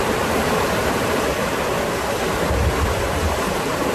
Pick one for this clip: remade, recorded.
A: remade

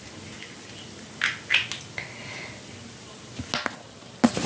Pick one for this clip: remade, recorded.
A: recorded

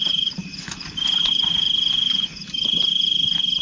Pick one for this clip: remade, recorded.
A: remade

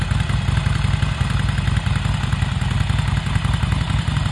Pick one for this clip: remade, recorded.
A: recorded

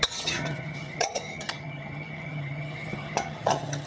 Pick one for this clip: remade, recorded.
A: remade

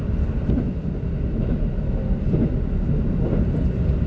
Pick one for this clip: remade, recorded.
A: recorded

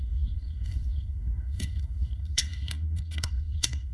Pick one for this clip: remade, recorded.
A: remade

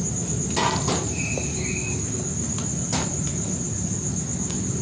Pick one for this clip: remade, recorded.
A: recorded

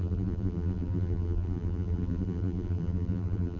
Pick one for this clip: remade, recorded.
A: remade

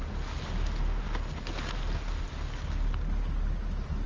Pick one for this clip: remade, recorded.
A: recorded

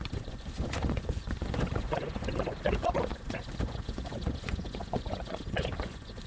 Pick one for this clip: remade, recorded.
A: remade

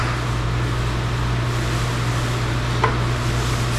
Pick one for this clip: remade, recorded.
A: recorded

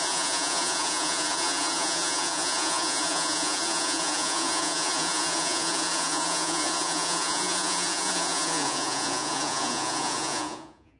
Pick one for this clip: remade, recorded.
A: remade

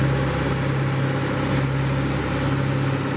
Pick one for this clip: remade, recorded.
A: recorded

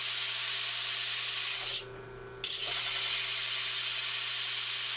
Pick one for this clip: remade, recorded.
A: recorded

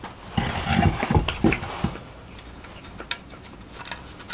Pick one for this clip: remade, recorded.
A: recorded